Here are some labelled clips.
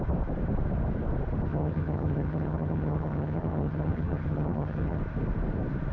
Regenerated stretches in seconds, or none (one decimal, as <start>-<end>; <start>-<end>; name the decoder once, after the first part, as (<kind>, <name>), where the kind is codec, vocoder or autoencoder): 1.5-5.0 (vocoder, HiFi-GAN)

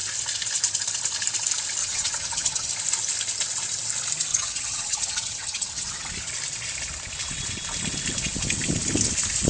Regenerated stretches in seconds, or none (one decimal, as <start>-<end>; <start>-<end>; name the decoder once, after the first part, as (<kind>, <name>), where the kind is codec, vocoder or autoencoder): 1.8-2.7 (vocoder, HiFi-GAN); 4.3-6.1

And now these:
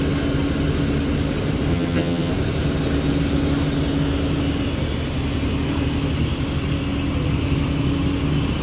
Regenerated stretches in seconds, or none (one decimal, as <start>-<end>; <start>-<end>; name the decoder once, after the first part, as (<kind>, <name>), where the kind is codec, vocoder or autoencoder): 1.7-2.3 (vocoder, HiFi-GAN)